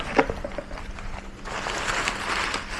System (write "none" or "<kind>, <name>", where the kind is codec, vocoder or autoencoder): none